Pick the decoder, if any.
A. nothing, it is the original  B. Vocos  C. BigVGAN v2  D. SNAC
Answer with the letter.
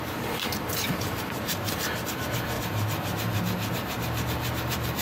C